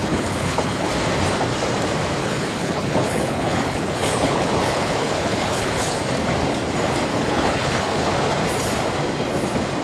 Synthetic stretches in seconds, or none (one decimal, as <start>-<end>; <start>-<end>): 0.0-0.9; 2.2-6.0; 7.1-8.1

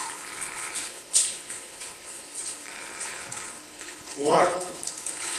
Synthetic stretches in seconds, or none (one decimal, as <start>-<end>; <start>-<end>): 0.0-5.4

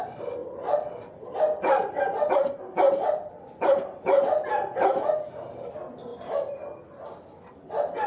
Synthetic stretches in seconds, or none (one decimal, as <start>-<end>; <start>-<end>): none

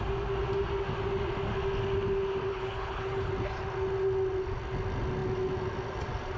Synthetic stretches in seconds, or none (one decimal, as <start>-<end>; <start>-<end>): 2.5-3.3

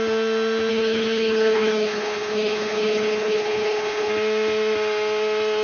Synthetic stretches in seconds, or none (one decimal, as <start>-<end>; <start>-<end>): 0.7-4.1

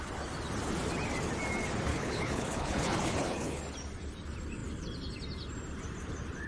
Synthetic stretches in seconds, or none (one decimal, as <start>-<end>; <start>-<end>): 1.9-3.6

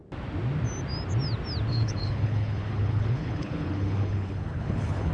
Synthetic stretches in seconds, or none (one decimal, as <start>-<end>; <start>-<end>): 1.7-5.1